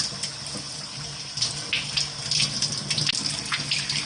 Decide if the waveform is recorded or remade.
recorded